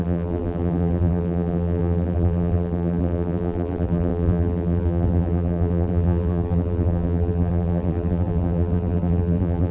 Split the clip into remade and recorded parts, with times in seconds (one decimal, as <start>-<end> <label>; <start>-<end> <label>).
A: 0.0-9.7 remade